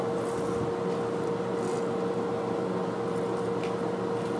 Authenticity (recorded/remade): recorded